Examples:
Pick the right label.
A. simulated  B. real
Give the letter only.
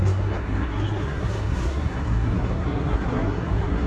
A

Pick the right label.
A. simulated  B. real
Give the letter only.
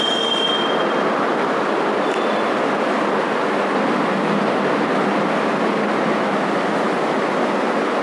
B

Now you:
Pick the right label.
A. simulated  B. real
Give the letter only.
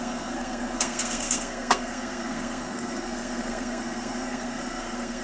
A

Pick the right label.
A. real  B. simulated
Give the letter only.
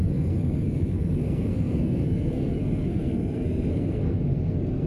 B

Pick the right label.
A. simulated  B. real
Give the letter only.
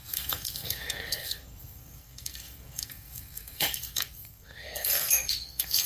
A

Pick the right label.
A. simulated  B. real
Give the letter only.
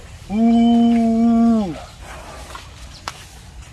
B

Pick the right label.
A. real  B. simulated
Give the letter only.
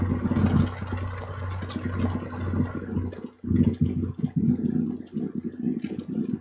A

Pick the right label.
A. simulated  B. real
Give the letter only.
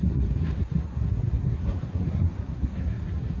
A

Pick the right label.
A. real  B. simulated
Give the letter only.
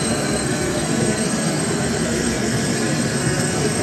B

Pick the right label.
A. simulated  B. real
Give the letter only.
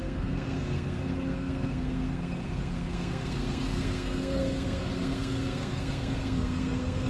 A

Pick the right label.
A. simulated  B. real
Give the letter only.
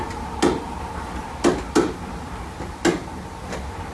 B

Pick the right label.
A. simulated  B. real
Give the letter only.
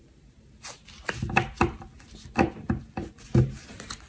B